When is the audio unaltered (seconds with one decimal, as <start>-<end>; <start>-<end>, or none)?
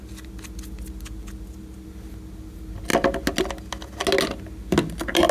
0.0-5.3